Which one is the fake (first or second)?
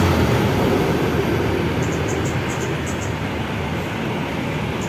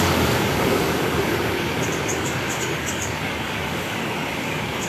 second